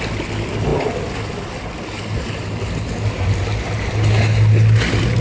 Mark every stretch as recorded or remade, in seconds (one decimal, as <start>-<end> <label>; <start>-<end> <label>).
0.0-5.2 recorded